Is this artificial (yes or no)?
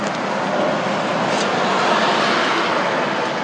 no